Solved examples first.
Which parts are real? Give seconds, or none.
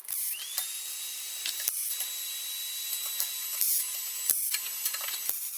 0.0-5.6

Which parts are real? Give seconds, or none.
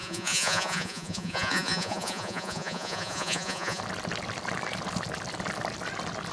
3.8-6.3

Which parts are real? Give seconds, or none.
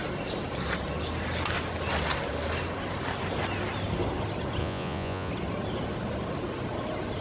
0.0-4.6; 5.3-7.2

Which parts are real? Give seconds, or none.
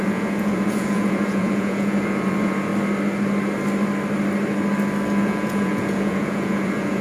2.7-5.2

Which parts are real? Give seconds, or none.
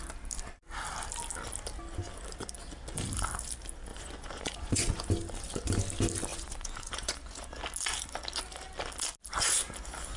0.0-3.9; 5.1-6.3; 7.6-10.2